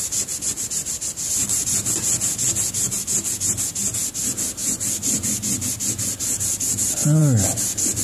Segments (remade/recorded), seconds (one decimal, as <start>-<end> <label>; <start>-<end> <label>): 0.0-8.0 recorded